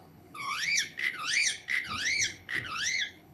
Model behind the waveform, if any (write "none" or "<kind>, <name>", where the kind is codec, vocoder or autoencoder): codec, HILCodec